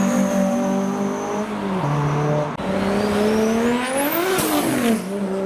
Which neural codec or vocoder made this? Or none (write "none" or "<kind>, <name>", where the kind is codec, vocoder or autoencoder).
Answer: none